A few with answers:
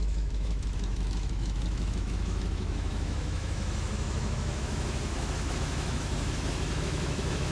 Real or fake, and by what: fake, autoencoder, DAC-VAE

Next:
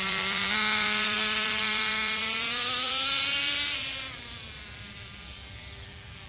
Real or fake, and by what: fake, vocoder, BigVGAN v2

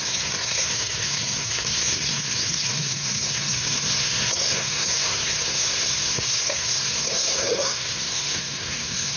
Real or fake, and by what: fake, codec, SNAC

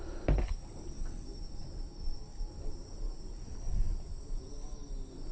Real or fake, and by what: real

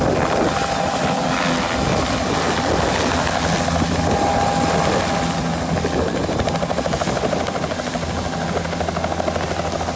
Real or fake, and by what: real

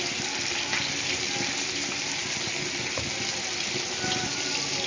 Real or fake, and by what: real